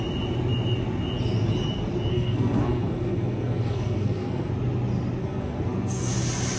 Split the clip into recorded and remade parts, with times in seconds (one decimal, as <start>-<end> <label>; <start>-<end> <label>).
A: 0.0-2.1 recorded; 2.1-4.5 remade; 4.5-5.2 recorded; 5.2-6.1 remade; 6.1-6.6 recorded